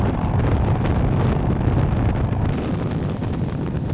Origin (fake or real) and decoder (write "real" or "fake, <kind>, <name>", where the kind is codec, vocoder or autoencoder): real